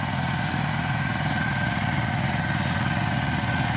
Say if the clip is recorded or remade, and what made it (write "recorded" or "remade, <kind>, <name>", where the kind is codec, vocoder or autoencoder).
remade, vocoder, Vocos